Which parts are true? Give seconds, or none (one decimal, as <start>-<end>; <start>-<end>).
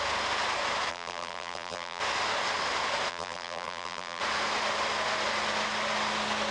0.0-0.9; 2.0-3.1; 4.2-6.5